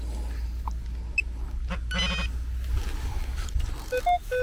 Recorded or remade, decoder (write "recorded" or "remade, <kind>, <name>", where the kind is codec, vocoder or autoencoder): recorded